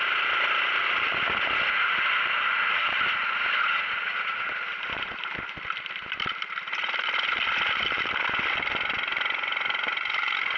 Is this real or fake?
real